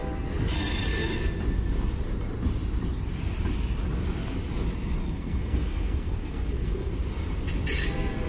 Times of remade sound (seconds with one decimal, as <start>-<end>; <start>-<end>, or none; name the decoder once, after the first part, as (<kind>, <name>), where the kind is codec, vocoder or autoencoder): 5.0-6.9 (codec, SNAC)